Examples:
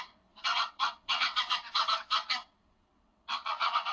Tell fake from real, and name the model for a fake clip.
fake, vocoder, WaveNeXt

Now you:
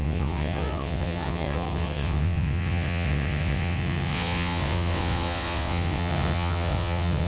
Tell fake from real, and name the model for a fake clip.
fake, vocoder, WaveNeXt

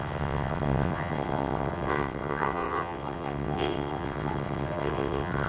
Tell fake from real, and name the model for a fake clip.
fake, vocoder, WaveNeXt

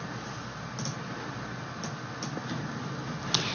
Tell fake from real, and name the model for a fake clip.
real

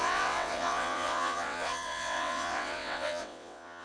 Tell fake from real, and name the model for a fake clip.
fake, vocoder, WaveNeXt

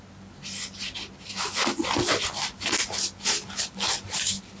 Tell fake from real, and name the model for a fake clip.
real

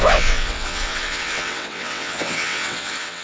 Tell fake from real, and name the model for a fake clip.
fake, vocoder, WaveNeXt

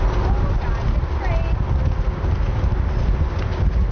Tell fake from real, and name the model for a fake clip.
real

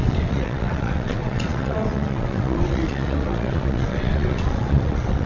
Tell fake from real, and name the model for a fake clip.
fake, vocoder, WaveNeXt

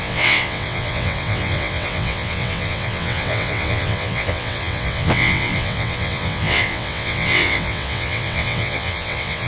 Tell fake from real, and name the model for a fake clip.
fake, vocoder, WaveNeXt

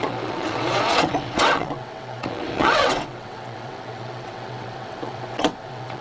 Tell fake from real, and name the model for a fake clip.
fake, vocoder, WaveNeXt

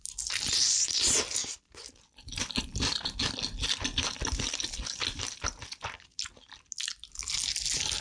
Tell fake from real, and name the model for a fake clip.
real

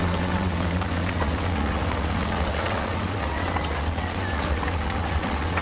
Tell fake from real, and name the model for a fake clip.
fake, vocoder, WaveNeXt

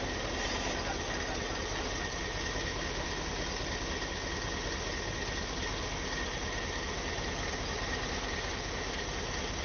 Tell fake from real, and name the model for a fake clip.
real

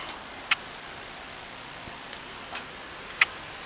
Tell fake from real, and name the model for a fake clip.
real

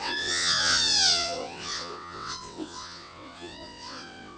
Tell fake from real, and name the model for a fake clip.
fake, vocoder, WaveNeXt